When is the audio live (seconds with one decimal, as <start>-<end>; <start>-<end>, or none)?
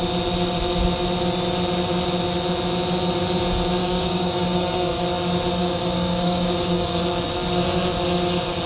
0.0-3.8; 5.0-5.6; 7.0-8.7